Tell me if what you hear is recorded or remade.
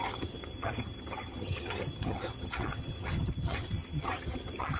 remade